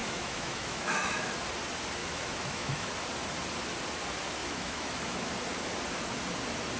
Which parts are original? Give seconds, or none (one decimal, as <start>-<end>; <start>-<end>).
1.3-2.0; 2.9-4.4; 5.3-6.8